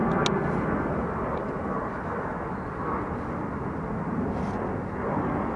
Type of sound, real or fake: real